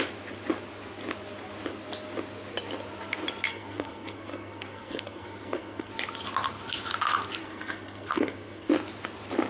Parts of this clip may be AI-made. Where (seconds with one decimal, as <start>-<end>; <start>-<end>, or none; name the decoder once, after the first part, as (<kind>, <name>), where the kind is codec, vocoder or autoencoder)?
3.5-5.9 (codec, SNAC); 7.4-8.7